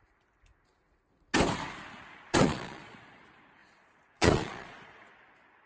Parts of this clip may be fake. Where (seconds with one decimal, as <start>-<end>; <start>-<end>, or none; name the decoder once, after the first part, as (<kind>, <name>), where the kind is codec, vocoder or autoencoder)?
2.4-3.2 (vocoder, Vocos); 3.6-5.1